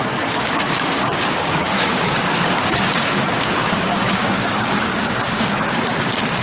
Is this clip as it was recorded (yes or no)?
no